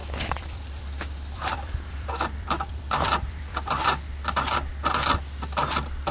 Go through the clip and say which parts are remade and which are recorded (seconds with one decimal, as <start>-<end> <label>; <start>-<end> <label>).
0.0-3.7 remade; 3.7-6.1 recorded